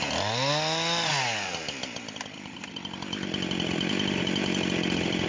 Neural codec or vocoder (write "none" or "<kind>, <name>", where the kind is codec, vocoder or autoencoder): none